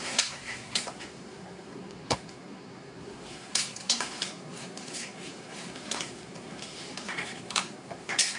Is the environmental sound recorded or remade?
remade